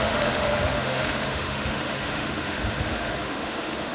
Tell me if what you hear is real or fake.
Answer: fake